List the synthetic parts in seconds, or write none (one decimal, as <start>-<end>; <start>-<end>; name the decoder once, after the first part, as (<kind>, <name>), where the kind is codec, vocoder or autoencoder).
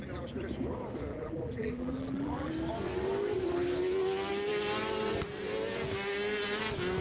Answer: 1.1-2.5 (vocoder, BigVGAN v2)